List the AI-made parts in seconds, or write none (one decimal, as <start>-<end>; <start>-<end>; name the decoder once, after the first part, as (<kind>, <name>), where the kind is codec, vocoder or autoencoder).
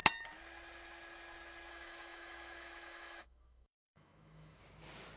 1.7-4.6 (autoencoder, DAC-VAE)